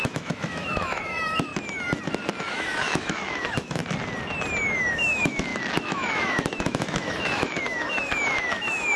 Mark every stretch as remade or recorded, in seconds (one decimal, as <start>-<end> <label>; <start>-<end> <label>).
0.0-1.5 remade; 1.5-2.4 recorded; 2.4-3.8 remade; 3.8-4.8 recorded; 4.8-9.0 remade